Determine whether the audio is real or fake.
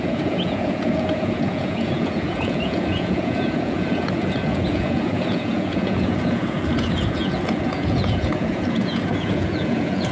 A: fake